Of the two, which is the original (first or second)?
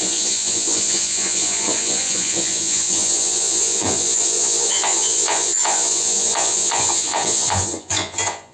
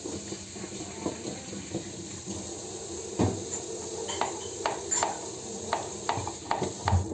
second